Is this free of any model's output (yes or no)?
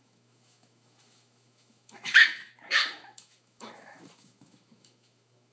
no